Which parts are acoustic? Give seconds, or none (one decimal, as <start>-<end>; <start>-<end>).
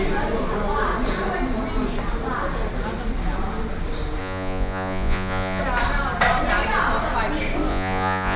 0.0-4.2; 5.6-7.7